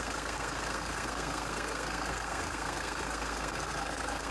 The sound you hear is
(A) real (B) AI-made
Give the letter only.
B